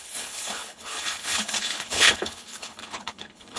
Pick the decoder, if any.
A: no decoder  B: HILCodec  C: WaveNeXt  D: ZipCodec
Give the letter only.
B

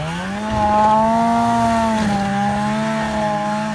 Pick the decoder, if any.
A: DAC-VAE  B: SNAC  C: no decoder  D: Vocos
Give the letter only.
C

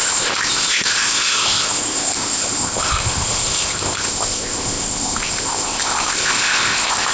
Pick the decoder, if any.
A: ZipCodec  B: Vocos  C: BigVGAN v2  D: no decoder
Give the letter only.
A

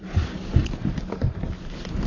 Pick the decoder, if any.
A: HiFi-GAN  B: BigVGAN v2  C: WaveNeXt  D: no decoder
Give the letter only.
D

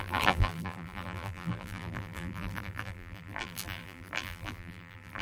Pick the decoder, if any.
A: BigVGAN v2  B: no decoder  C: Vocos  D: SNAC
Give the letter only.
A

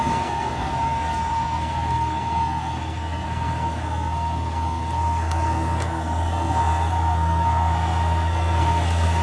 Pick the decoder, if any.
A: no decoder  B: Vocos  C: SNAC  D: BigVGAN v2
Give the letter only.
C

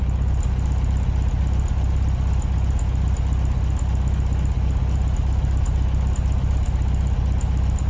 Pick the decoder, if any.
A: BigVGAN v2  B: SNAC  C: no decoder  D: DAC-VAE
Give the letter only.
C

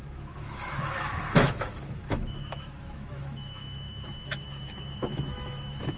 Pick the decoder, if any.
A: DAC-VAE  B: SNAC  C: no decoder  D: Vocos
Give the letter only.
A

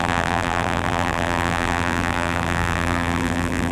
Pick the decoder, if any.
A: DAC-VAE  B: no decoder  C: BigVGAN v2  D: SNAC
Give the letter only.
C